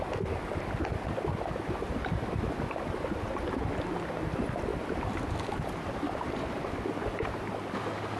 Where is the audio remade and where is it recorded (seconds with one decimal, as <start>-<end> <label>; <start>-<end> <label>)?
0.0-8.2 recorded